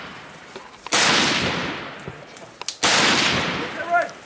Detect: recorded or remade recorded